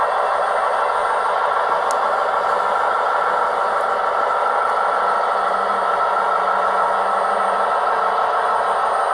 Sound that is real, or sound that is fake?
real